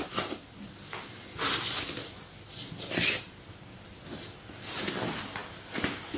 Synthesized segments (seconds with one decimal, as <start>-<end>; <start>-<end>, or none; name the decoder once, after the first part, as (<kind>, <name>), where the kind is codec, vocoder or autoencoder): 3.2-6.2 (vocoder, BigVGAN v2)